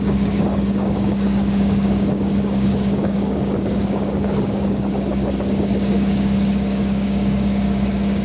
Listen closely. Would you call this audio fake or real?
fake